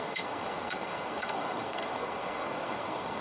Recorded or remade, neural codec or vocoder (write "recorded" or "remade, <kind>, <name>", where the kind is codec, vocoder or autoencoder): remade, codec, SNAC